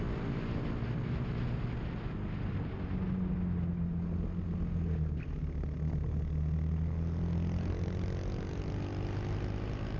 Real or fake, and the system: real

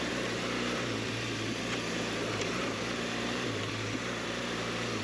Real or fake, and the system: fake, vocoder, BigVGAN v2